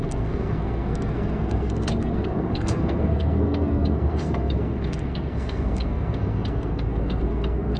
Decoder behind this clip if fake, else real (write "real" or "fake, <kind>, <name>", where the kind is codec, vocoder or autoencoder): fake, codec, SNAC